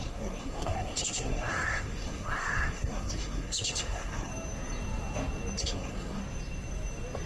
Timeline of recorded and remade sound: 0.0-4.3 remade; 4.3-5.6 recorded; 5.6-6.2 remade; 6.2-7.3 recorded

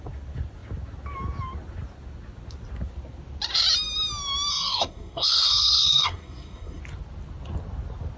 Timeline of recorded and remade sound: 0.0-4.5 recorded; 4.5-6.8 remade; 6.8-8.2 recorded

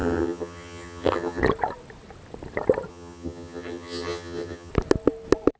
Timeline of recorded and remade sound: 0.0-1.4 remade; 1.4-2.9 recorded; 2.9-4.7 remade; 4.7-5.6 recorded